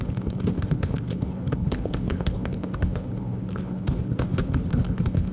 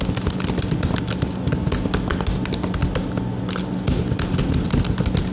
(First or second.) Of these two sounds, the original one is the second